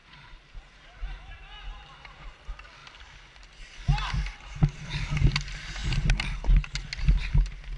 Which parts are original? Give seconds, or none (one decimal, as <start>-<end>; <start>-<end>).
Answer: 1.4-7.8